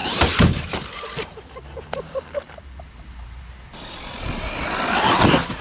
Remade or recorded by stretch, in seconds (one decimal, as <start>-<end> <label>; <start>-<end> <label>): 0.0-3.4 remade; 3.4-5.6 recorded